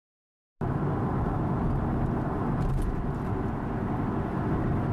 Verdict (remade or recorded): recorded